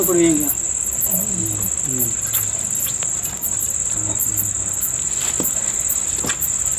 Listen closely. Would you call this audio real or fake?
real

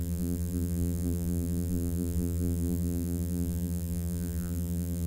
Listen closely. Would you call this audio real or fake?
fake